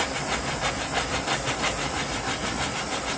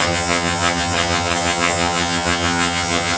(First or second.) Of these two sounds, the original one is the first